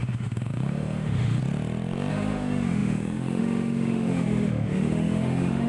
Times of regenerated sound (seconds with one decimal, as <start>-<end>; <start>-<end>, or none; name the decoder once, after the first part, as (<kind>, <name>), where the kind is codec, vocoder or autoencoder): 0.0-1.4 (autoencoder, DAC-VAE); 2.1-5.7